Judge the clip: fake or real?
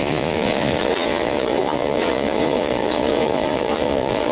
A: fake